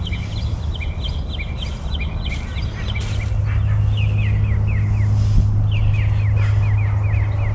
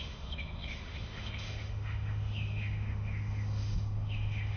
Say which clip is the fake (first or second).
second